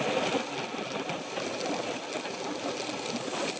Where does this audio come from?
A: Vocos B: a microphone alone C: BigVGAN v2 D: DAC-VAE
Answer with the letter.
B